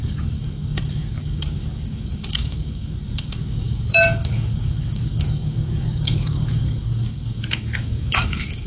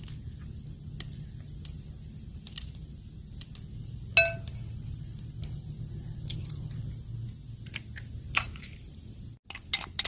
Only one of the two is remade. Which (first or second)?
first